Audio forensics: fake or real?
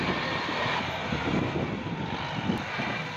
real